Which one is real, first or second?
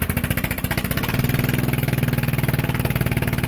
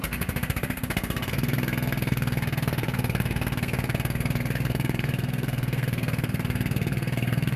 first